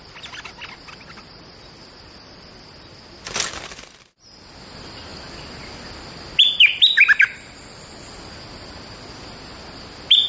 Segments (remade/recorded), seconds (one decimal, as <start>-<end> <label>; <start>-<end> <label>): 0.0-10.3 recorded